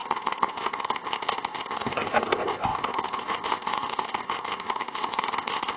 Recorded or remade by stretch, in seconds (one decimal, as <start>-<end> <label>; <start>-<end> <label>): 0.0-5.8 remade